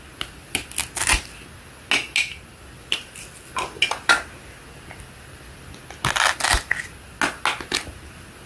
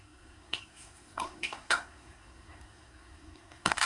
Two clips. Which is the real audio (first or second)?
first